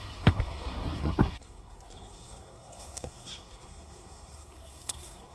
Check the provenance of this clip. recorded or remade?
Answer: remade